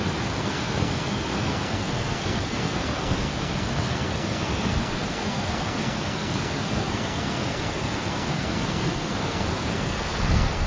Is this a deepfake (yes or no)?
yes